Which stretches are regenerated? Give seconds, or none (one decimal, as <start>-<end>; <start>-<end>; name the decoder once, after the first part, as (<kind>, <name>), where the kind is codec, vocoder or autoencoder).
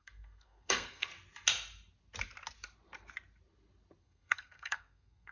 0.0-1.1 (codec, SNAC); 4.0-5.3